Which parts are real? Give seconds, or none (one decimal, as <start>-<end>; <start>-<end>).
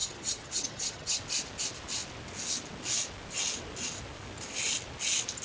1.2-5.4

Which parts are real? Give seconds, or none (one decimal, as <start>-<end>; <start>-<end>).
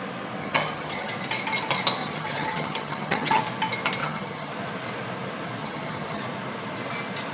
0.0-0.4; 1.1-2.0; 3.4-4.0; 4.5-5.6; 6.2-7.3